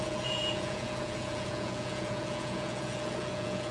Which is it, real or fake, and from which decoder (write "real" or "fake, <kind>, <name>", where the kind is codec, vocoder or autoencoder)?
fake, vocoder, Vocos